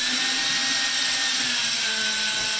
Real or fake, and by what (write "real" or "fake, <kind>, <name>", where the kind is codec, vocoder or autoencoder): real